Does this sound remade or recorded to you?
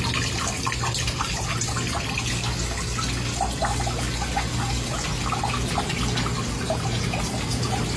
recorded